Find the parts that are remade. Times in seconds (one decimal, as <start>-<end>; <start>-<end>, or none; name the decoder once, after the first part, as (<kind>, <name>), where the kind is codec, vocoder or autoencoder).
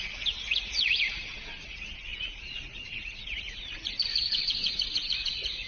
0.0-5.7 (vocoder, Vocos)